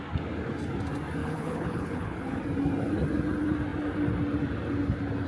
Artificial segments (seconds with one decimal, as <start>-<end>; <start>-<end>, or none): 1.2-2.4